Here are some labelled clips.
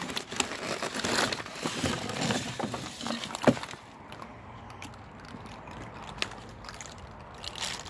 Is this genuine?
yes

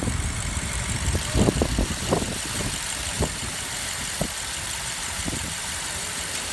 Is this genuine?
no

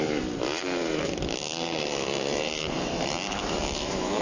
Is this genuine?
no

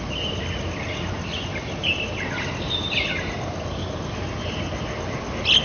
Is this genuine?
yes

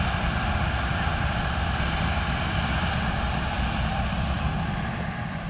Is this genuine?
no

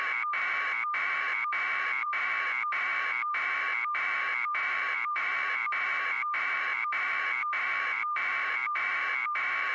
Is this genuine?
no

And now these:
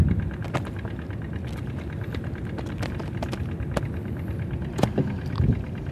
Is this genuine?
yes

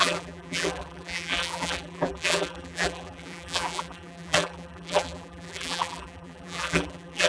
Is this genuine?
no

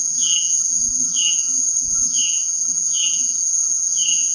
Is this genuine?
no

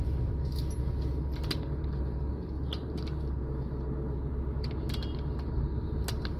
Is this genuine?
yes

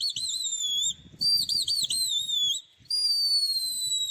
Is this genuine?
yes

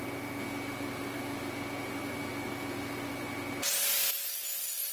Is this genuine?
yes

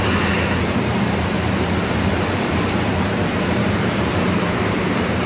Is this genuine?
no